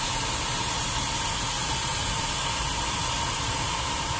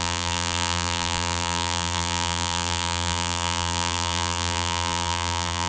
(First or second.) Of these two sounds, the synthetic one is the second